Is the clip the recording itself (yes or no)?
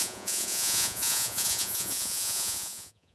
no